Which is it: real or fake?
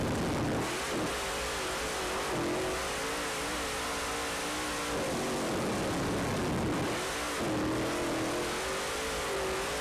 real